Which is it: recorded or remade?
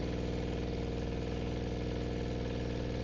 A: recorded